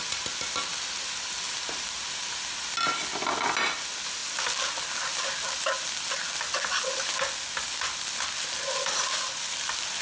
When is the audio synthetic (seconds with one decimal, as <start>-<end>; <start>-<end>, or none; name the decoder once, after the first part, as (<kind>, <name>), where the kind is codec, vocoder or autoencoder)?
none